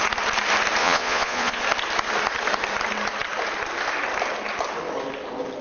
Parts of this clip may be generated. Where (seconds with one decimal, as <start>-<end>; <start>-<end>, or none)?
0.8-1.6